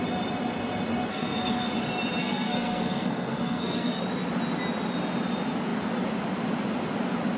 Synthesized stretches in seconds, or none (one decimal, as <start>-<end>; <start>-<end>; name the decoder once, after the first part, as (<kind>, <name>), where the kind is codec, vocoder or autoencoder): 1.1-1.7 (codec, SNAC); 2.2-4.0